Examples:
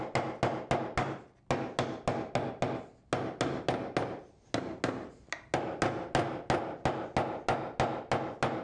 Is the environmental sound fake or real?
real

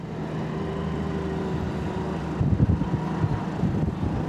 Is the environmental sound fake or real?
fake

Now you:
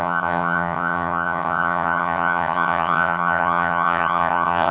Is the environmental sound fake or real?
fake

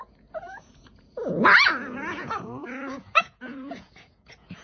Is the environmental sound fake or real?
fake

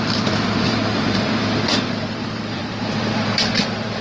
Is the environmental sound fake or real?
fake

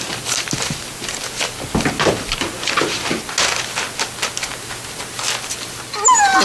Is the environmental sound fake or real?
real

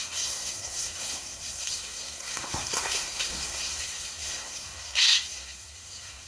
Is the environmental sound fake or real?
fake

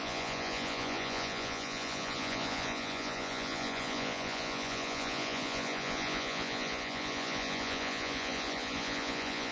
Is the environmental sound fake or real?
fake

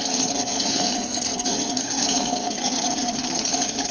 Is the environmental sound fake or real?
fake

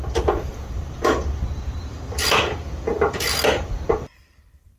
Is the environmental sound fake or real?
fake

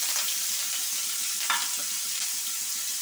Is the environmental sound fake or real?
real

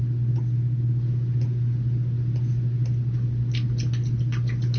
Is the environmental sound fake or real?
real